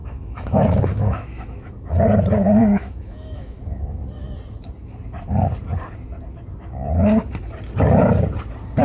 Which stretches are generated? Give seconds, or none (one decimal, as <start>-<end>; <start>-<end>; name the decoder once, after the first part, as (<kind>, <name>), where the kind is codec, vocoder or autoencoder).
0.0-1.7 (autoencoder, DAC-VAE); 2.6-3.6